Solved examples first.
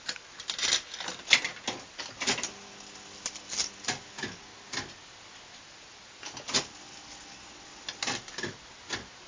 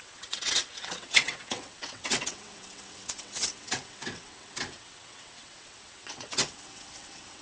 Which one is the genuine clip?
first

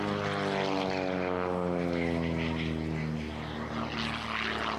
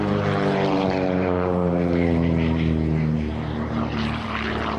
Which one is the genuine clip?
first